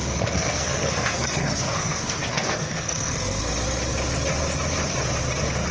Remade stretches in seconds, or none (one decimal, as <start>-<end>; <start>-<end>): 0.0-3.4